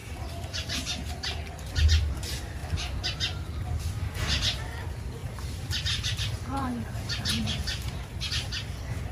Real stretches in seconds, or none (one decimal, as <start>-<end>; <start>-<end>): 0.0-5.2; 8.5-9.1